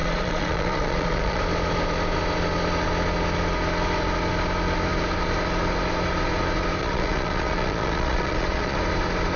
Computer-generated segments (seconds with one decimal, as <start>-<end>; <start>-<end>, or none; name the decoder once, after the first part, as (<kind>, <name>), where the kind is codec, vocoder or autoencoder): 0.0-1.4 (vocoder, Vocos); 6.8-8.8